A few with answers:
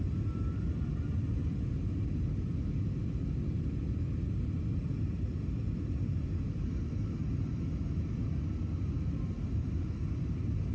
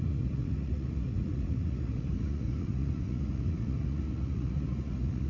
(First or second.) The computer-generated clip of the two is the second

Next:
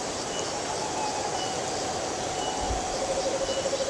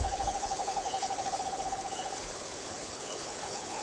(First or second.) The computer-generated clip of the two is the second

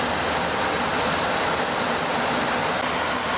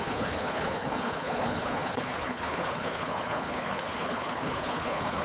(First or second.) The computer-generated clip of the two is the second